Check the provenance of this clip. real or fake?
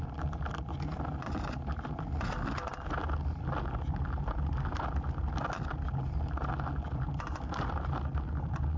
real